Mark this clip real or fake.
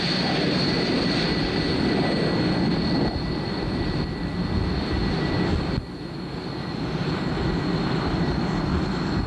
real